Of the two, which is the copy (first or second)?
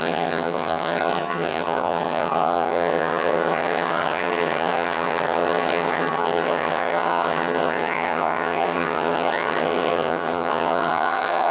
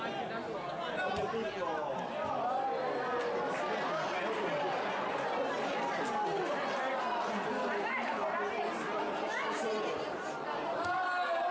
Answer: first